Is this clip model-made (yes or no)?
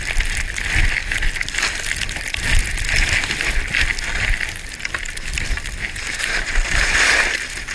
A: no